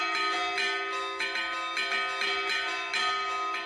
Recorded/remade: recorded